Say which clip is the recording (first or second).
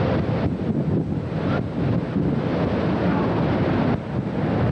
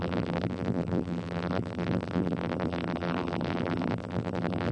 first